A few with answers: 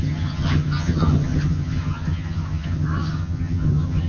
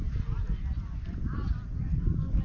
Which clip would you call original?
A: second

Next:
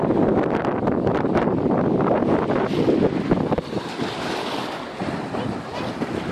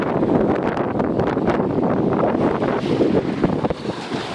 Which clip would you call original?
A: first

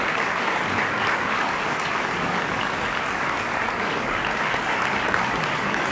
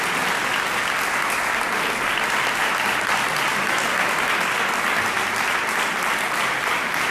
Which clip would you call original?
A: second